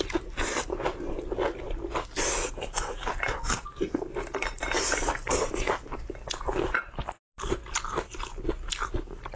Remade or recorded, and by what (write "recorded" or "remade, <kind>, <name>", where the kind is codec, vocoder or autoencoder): recorded